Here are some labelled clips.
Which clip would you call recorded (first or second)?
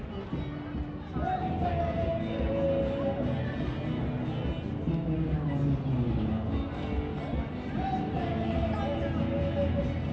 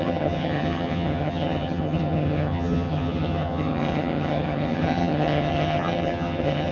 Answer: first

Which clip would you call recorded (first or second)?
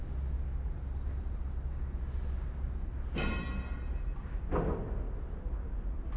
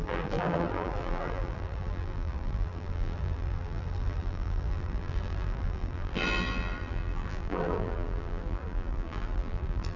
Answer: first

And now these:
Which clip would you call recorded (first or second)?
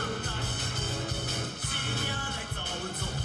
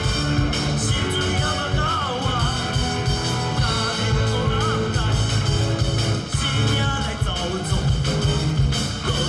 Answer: second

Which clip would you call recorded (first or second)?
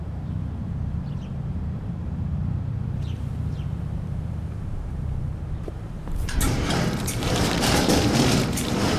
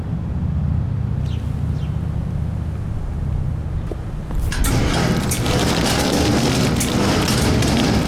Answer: second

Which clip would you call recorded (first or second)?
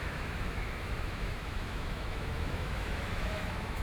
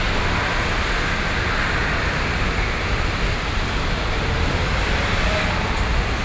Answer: second